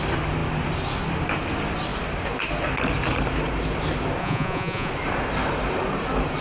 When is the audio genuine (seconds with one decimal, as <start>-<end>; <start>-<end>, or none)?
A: 0.0-4.2; 4.9-6.4

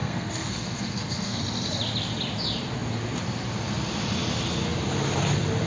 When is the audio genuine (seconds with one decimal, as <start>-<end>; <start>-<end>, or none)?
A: 1.4-5.7

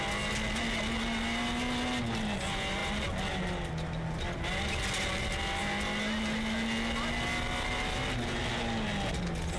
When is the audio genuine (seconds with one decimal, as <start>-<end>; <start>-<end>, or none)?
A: 0.0-9.6

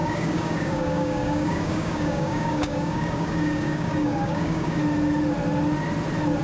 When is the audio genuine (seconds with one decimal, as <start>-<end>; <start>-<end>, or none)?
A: 4.8-6.4

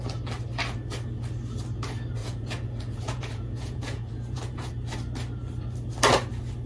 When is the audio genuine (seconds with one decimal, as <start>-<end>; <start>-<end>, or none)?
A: 0.0-2.2; 4.7-6.7

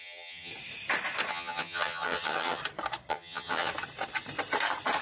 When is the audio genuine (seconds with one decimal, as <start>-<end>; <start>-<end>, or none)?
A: 0.5-1.3; 2.6-3.1; 3.7-5.0

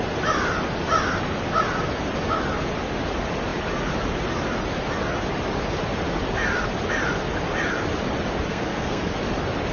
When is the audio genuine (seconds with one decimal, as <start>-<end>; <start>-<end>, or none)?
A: 0.0-8.5; 9.0-9.7